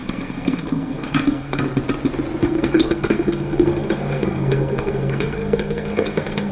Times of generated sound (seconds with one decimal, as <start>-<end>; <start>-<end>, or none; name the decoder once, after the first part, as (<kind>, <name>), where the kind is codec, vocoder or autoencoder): 0.0-1.6 (codec, SNAC); 2.4-6.5